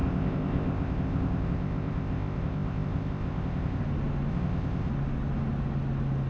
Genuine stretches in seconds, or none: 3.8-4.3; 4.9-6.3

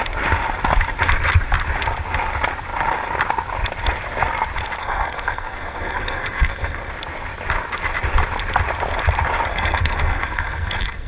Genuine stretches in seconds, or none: 0.0-4.8; 6.9-9.5

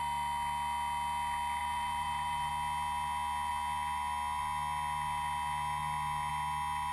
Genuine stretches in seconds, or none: 0.0-1.6; 2.5-6.9